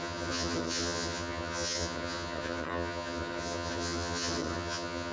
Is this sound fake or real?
fake